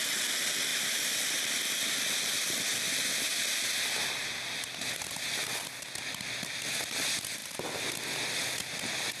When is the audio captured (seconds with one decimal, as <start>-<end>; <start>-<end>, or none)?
0.0-0.7; 2.3-4.0; 5.0-9.2